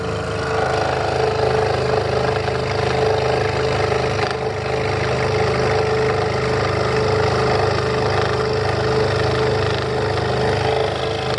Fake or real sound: real